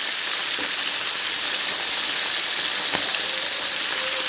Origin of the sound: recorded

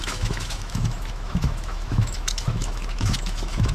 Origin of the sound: remade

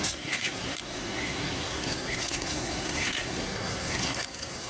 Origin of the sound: remade